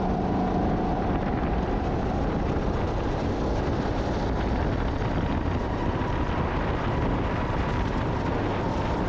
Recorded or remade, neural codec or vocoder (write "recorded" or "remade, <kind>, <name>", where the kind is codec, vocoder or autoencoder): recorded